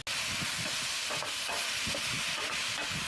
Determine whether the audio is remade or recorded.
recorded